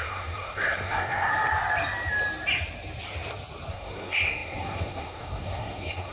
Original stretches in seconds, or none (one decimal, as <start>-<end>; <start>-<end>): 1.3-3.7